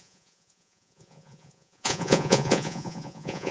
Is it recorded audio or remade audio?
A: remade